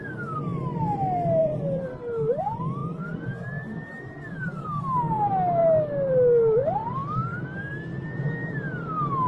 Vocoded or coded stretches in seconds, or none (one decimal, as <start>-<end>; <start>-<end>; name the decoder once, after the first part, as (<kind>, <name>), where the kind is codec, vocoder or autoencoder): 1.4-2.4 (vocoder, BigVGAN v2)